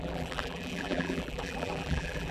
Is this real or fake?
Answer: fake